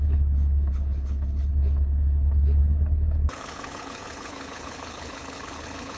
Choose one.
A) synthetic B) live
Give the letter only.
A